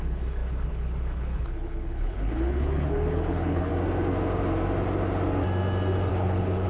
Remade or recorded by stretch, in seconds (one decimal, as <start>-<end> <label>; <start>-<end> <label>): 0.0-3.7 remade; 3.7-6.1 recorded; 6.1-6.7 remade